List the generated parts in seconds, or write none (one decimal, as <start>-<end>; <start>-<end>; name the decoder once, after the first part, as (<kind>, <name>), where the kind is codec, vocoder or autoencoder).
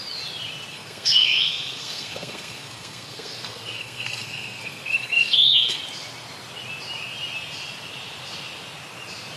0.7-5.8 (codec, SNAC)